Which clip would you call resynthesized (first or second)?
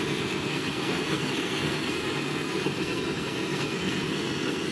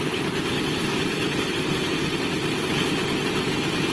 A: first